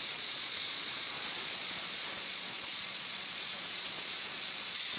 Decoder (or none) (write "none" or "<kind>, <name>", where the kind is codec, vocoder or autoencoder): vocoder, Vocos